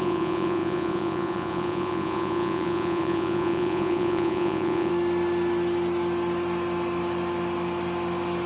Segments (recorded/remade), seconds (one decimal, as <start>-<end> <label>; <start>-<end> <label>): 0.0-4.9 remade; 4.9-8.5 recorded